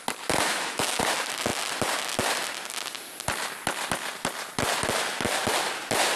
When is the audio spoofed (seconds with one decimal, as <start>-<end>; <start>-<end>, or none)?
0.5-1.0